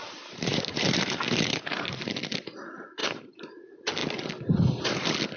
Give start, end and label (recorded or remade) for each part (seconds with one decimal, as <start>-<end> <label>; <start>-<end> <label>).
0.0-1.6 remade; 1.6-3.0 recorded; 3.0-3.5 remade; 3.5-5.4 recorded

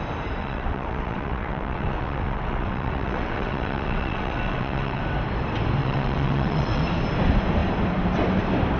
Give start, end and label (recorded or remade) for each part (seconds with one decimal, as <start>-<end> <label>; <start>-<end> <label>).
0.0-0.4 recorded; 0.4-5.0 remade; 5.0-5.8 recorded; 5.8-6.8 remade; 6.8-8.8 recorded

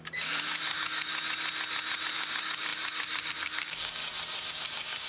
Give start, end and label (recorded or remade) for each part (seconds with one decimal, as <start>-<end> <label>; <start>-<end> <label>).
0.0-1.1 remade; 1.1-2.1 recorded; 2.1-4.0 remade; 4.0-4.5 recorded; 4.5-5.1 remade

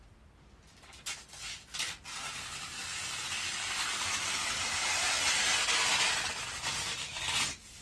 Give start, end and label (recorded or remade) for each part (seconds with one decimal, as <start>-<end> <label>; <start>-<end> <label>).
0.0-7.8 recorded